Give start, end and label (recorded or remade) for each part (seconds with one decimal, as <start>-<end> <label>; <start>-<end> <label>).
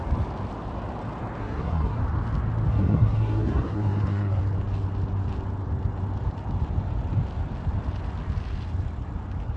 0.0-1.4 recorded; 1.4-2.0 remade; 2.0-2.7 recorded; 2.7-4.4 remade; 4.4-9.6 recorded